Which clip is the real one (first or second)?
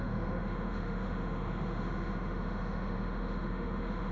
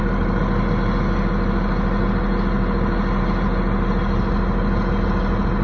second